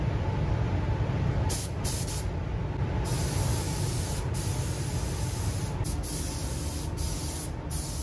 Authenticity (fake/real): real